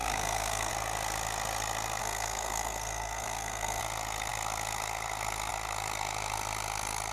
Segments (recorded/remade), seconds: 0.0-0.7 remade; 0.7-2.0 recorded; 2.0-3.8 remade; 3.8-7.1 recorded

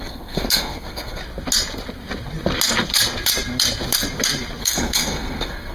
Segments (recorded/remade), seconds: 0.0-1.2 remade; 1.2-4.6 recorded; 4.6-5.7 remade

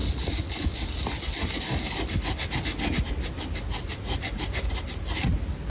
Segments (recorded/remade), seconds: 0.0-5.7 recorded

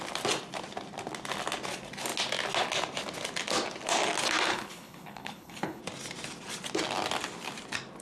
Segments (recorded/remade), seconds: 0.0-4.5 recorded; 4.5-5.8 remade; 5.8-8.0 recorded

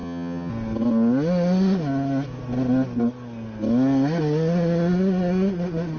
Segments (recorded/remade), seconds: 0.0-0.5 remade; 0.5-6.0 recorded